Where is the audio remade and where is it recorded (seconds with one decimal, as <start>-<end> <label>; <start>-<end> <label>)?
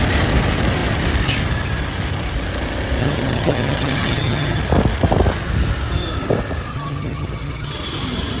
0.0-3.0 recorded; 3.0-4.6 remade; 4.6-6.7 recorded; 6.7-7.7 remade; 7.7-8.4 recorded